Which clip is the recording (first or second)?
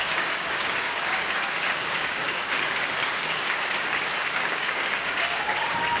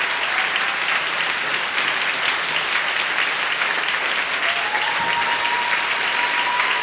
second